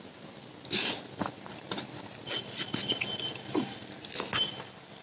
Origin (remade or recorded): recorded